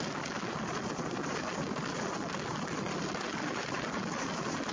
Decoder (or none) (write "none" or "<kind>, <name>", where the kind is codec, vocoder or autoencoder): none